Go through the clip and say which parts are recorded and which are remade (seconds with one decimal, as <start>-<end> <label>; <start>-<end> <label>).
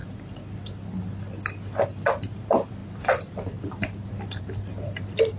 0.0-1.5 remade; 1.5-2.8 recorded; 2.8-4.4 remade; 4.4-5.4 recorded